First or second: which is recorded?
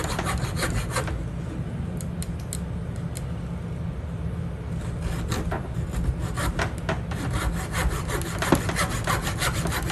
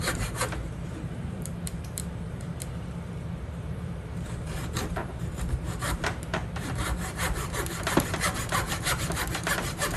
first